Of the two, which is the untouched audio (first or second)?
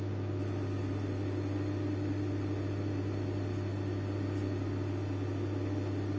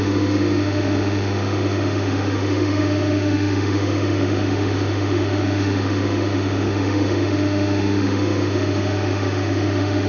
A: first